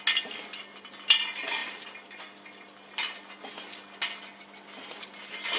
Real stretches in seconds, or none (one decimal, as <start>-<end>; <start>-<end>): 0.0-5.6